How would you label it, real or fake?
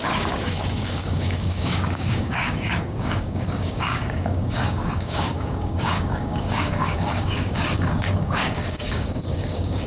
fake